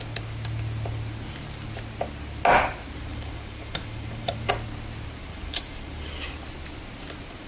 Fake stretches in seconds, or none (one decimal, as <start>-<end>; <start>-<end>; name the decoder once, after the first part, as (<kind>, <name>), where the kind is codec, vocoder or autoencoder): 3.1-4.5 (vocoder, BigVGAN v2); 5.2-6.1